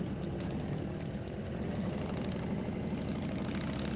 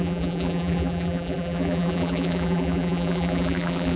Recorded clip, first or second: first